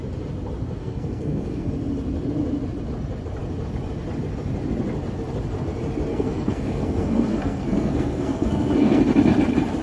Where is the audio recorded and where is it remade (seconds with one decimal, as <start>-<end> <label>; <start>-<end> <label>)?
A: 0.0-0.8 recorded; 0.8-1.7 remade; 1.7-6.1 recorded; 6.1-9.0 remade; 9.0-9.8 recorded